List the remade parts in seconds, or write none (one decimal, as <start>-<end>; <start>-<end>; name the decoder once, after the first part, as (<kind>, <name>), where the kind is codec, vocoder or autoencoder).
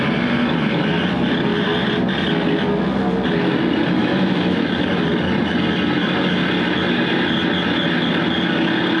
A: 4.0-4.8 (autoencoder, DAC-VAE)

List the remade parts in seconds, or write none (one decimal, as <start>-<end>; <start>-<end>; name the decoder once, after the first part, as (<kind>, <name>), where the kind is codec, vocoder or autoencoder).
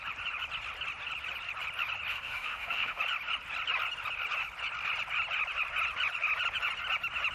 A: 2.1-3.0 (autoencoder, DAC-VAE)